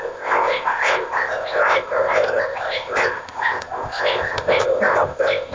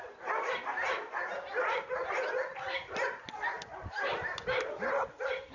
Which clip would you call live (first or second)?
second